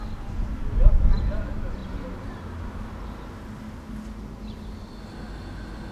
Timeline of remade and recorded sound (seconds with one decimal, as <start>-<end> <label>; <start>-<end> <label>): 0.0-5.9 recorded